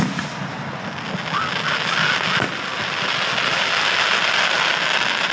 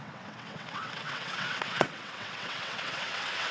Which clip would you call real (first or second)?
first